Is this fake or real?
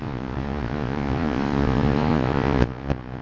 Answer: fake